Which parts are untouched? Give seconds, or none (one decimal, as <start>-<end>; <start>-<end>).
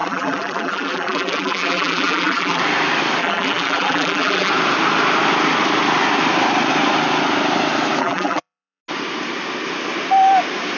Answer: 2.6-3.2; 4.5-8.0; 8.8-10.8